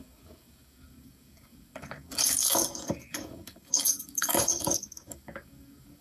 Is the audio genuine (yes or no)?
no